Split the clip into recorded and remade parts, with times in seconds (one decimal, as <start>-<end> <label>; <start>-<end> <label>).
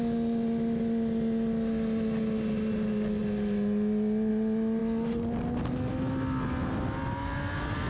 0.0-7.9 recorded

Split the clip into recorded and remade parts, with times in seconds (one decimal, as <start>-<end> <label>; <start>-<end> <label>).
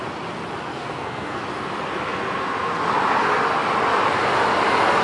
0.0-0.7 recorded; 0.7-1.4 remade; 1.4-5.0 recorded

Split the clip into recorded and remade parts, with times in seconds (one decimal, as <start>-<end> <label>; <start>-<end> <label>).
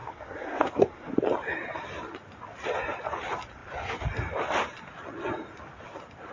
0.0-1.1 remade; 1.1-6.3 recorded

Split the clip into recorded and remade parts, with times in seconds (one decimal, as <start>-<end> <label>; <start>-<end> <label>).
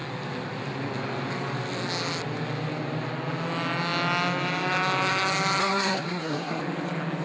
0.0-5.6 recorded; 5.6-6.6 remade; 6.6-7.2 recorded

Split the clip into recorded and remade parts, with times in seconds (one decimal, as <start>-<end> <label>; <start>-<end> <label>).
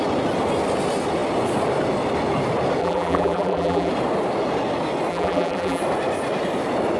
0.0-2.8 recorded; 2.8-3.9 remade; 3.9-5.1 recorded; 5.1-5.8 remade; 5.8-7.0 recorded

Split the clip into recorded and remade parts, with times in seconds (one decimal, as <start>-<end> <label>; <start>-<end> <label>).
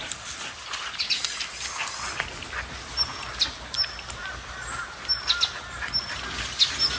0.0-7.0 recorded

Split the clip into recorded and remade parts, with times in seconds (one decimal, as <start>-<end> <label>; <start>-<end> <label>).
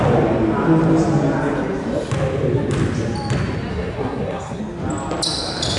0.0-3.7 recorded; 3.7-4.6 remade; 4.6-5.8 recorded